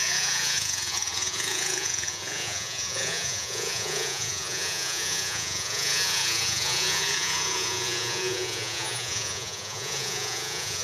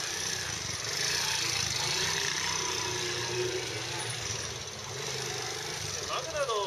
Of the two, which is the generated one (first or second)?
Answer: first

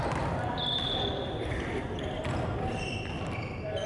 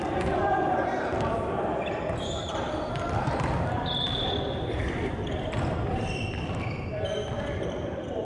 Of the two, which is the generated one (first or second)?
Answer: second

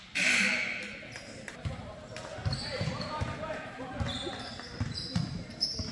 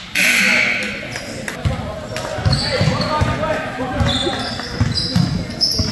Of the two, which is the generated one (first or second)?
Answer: first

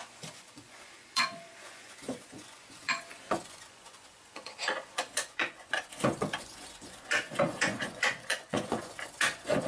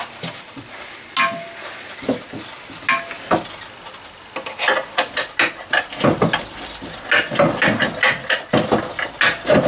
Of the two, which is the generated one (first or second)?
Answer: first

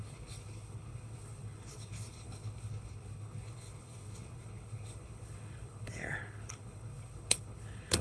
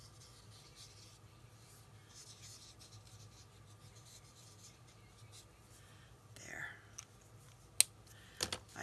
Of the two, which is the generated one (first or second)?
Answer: first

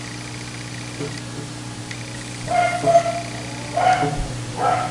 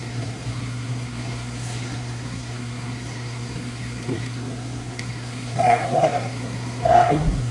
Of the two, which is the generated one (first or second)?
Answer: second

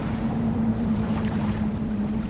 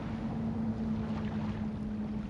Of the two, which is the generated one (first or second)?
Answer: first